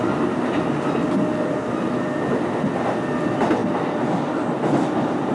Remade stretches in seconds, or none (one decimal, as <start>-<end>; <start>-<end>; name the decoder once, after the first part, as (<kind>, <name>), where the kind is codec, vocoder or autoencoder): none